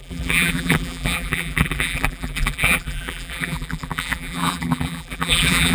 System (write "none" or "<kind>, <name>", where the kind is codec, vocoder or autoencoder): vocoder, BigVGAN v2